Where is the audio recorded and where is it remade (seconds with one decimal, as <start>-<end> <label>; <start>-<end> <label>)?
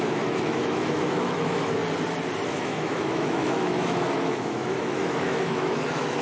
0.0-1.8 remade; 1.8-2.5 recorded; 2.5-6.2 remade